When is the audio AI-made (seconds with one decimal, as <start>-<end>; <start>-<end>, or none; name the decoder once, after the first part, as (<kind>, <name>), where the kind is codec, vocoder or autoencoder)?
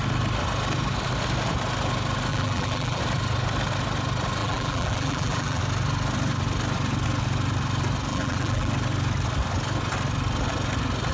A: 2.3-3.0 (vocoder, BigVGAN v2); 4.4-5.6; 8.1-8.7